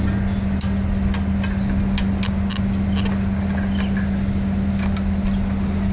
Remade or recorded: recorded